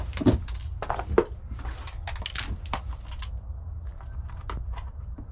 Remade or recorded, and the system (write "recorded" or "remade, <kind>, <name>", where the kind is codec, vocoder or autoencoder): recorded